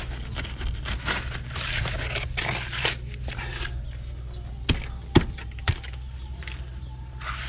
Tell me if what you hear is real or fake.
real